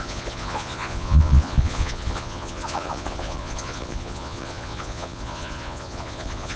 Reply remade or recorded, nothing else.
remade